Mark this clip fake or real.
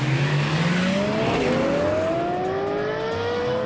real